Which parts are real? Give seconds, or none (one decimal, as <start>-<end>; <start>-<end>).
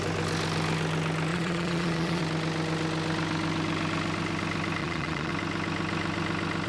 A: 0.0-1.3; 2.2-4.8; 5.3-6.7